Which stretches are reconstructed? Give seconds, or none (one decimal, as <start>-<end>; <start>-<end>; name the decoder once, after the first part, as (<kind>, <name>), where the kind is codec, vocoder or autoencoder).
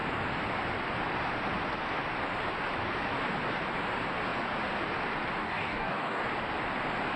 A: 5.4-6.2 (codec, DAC)